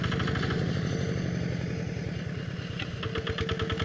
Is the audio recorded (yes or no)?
yes